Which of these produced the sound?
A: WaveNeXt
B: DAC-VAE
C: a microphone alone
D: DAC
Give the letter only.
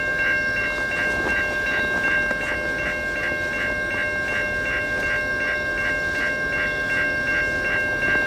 C